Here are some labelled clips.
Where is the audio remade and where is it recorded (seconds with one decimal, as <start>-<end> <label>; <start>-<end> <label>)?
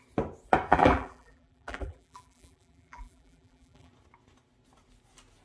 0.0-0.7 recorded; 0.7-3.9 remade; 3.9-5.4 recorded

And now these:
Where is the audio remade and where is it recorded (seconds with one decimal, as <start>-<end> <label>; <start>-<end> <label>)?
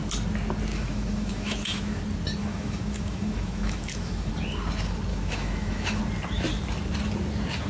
0.0-0.7 recorded; 0.7-2.0 remade; 2.0-2.4 recorded; 2.4-4.3 remade; 4.3-5.1 recorded; 5.1-6.0 remade; 6.0-7.7 recorded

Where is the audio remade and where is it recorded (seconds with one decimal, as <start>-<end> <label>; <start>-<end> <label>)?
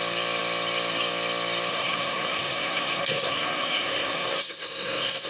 0.0-1.7 recorded; 1.7-5.3 remade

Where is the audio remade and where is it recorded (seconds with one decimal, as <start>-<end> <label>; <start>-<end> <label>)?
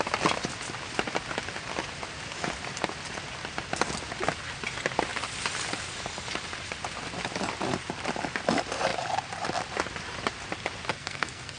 0.0-10.9 recorded; 10.9-11.6 remade